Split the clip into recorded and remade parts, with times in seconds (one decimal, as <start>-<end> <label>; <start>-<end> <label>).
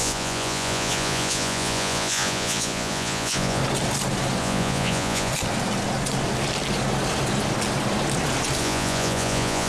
0.0-3.6 remade; 3.6-4.4 recorded; 4.4-5.3 remade; 5.3-8.6 recorded; 8.6-9.7 remade